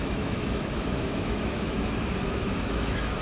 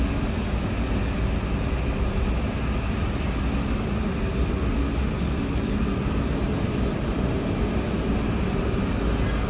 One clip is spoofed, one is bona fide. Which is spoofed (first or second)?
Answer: first